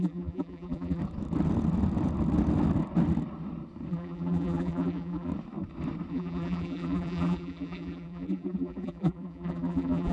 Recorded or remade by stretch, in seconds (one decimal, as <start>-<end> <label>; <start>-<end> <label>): 0.0-1.0 remade; 1.0-3.9 recorded; 3.9-5.3 remade; 5.3-6.1 recorded; 6.1-10.1 remade